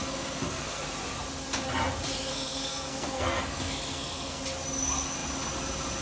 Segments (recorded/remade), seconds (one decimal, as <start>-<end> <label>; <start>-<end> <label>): 0.0-0.8 remade; 0.8-2.3 recorded; 2.3-4.4 remade; 4.4-6.0 recorded